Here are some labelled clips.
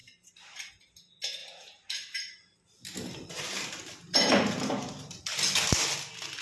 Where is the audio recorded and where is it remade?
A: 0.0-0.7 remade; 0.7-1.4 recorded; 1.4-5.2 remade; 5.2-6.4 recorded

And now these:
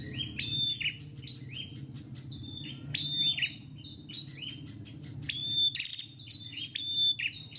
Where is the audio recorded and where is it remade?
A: 0.0-7.6 recorded